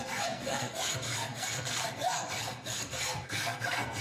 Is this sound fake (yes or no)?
yes